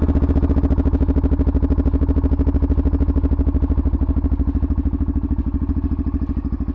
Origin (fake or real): real